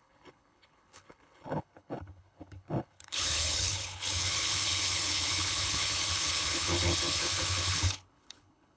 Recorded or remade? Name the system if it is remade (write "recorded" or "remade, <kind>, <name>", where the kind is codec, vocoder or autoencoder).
remade, codec, HILCodec